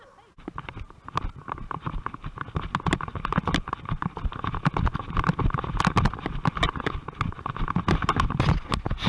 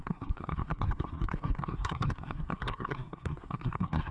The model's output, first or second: second